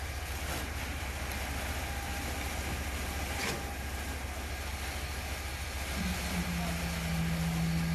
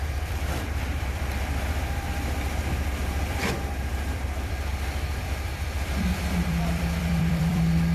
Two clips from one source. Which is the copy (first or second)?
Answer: second